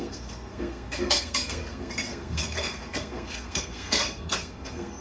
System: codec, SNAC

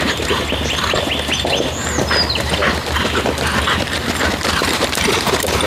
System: vocoder, BigVGAN v2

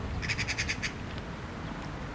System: none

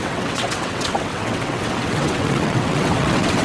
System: vocoder, WaveNeXt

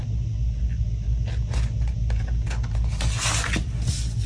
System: none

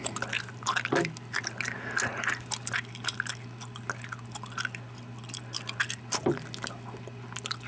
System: none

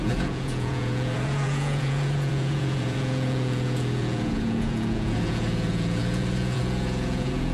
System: vocoder, Vocos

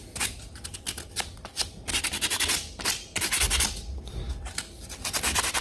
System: none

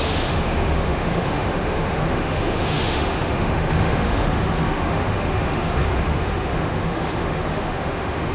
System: autoencoder, DAC-VAE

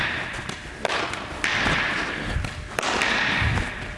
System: none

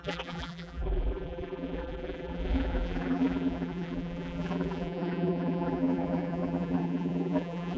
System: vocoder, BigVGAN v2